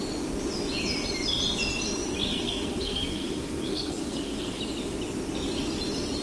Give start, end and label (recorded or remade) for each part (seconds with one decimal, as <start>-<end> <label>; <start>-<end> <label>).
0.0-2.3 recorded; 2.3-4.6 remade; 4.6-6.2 recorded